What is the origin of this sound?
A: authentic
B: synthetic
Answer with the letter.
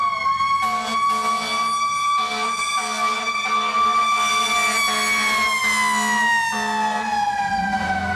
A